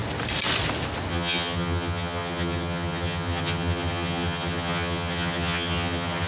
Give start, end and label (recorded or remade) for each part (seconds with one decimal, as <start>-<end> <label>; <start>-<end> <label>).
0.0-1.1 recorded; 1.1-6.3 remade